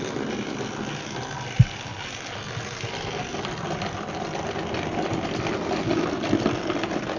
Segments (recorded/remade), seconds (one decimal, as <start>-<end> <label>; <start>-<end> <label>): 0.0-7.2 recorded